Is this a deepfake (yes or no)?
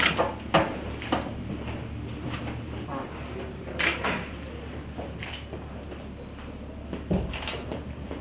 no